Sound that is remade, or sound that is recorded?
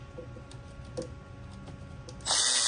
recorded